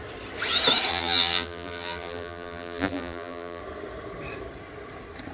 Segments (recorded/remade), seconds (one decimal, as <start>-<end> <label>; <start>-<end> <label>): 0.0-0.9 recorded; 0.9-3.6 remade; 3.6-5.3 recorded